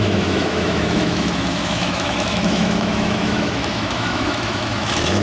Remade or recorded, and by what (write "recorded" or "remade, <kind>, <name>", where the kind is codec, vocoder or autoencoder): remade, autoencoder, DAC-VAE